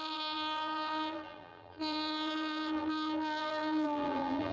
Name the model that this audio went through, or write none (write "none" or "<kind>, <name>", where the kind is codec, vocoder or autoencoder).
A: vocoder, BigVGAN v2